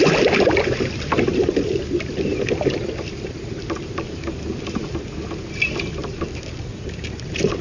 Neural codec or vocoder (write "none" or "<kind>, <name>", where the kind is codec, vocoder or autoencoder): none